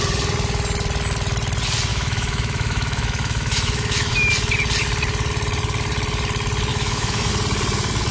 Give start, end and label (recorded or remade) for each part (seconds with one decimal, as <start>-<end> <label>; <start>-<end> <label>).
0.0-1.9 recorded; 1.9-4.3 remade; 4.3-6.7 recorded; 6.7-7.3 remade; 7.3-8.1 recorded